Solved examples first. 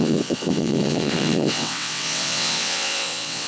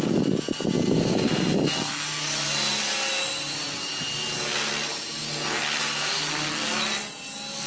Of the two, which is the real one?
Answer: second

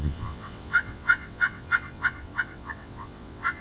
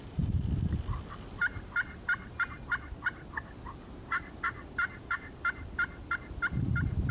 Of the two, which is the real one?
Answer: second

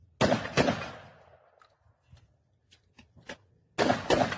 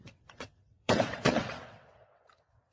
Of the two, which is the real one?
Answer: first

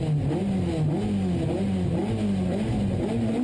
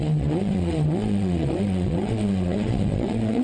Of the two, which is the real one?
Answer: first